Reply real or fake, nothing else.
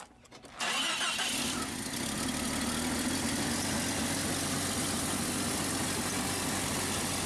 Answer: real